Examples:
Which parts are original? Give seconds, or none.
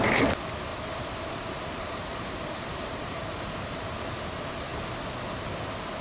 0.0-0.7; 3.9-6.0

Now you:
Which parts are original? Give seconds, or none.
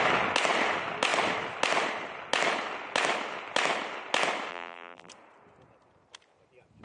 0.0-4.5; 5.1-6.8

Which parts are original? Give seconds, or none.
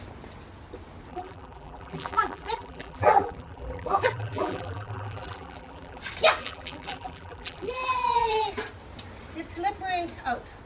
0.0-1.1; 6.0-6.4; 8.5-10.7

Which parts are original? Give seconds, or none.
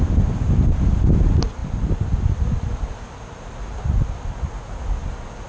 0.0-5.5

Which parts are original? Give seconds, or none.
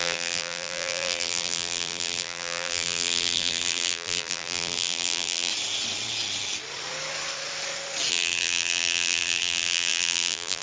5.5-8.1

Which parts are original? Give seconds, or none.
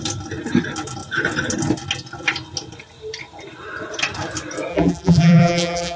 0.0-4.7